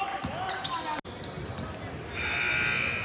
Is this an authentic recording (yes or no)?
yes